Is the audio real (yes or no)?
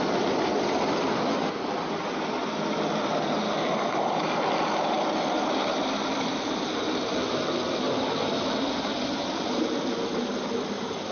yes